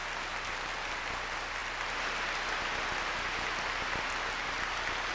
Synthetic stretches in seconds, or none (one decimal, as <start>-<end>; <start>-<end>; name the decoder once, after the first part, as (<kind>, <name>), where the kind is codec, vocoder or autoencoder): none